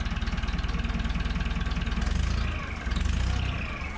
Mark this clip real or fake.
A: real